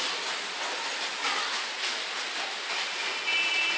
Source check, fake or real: real